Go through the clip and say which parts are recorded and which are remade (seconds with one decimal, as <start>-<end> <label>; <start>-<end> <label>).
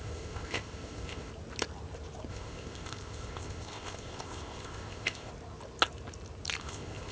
0.0-1.3 remade; 1.3-2.3 recorded; 2.3-5.3 remade; 5.3-6.6 recorded; 6.6-7.1 remade